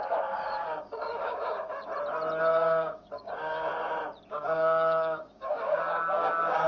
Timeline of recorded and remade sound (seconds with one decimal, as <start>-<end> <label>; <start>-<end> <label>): 0.0-1.9 remade; 1.9-2.4 recorded; 2.4-3.7 remade; 3.7-4.3 recorded; 4.3-6.7 remade